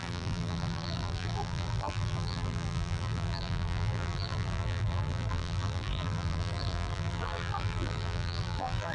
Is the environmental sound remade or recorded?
remade